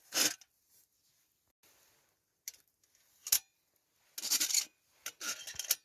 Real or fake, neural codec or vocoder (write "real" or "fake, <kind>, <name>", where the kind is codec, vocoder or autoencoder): real